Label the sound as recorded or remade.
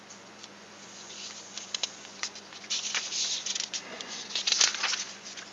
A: remade